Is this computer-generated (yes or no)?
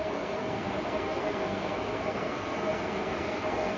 yes